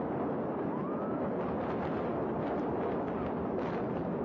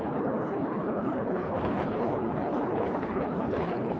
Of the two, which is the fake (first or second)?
second